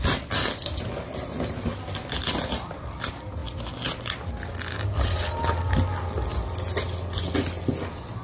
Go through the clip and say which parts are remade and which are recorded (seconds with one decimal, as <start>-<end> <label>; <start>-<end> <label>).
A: 0.0-8.2 recorded